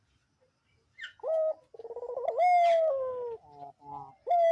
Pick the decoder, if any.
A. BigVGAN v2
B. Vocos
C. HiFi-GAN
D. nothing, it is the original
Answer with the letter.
D